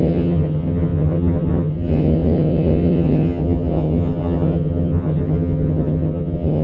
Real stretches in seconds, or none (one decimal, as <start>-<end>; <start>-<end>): none

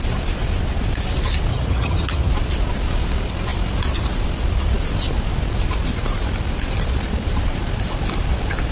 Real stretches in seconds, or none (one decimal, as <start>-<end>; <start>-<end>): 0.0-1.5; 2.3-8.7

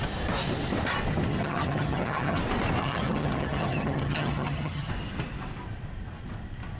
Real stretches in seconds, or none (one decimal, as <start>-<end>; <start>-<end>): 0.0-1.3; 2.4-2.8; 4.9-6.8